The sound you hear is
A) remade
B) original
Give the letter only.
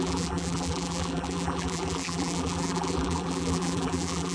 A